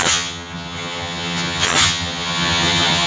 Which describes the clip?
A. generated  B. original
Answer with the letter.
A